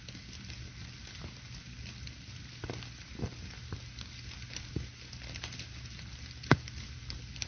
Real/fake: real